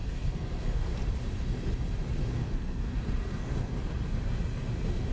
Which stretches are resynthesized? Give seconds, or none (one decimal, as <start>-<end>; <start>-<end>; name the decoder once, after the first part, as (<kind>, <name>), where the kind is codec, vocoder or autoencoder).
0.0-0.9 (codec, SNAC); 2.3-3.7